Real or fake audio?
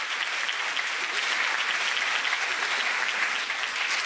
real